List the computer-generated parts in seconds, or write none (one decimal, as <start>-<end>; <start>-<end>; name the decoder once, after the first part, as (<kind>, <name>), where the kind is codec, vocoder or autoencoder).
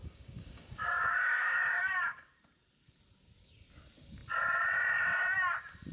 0.0-2.3 (codec, DAC)